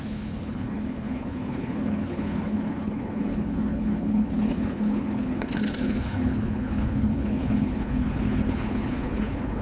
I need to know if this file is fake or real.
fake